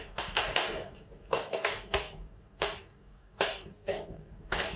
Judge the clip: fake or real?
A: fake